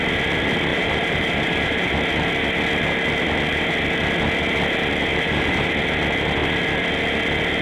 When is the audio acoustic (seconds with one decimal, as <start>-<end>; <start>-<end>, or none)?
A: 0.0-0.7; 1.9-5.1; 5.7-7.6